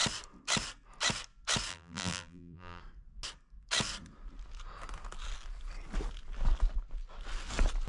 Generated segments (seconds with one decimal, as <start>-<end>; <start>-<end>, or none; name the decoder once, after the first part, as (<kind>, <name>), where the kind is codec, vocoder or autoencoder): 1.7-2.8 (vocoder, BigVGAN v2)